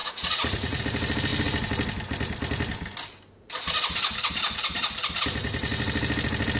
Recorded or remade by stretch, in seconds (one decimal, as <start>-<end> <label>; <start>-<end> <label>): 0.0-0.8 remade; 0.8-6.6 recorded